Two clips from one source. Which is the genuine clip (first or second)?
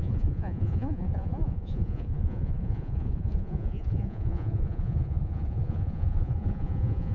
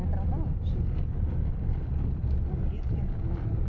second